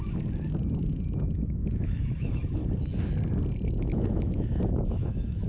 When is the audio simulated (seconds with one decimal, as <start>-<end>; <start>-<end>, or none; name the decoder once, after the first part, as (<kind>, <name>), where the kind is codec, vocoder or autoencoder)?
0.0-2.6 (autoencoder, DAC-VAE); 3.7-5.5